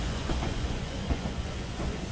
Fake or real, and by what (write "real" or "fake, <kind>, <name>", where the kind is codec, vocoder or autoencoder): fake, vocoder, Vocos